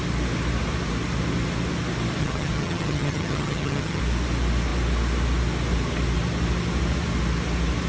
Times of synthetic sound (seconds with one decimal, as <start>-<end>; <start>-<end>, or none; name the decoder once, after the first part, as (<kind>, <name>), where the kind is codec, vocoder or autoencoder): 2.2-4.0 (vocoder, HiFi-GAN)